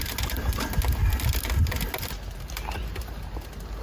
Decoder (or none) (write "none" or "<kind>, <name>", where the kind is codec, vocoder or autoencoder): none